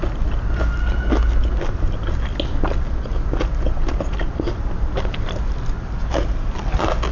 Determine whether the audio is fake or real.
real